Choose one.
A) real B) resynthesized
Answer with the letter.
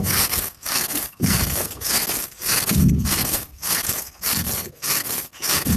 B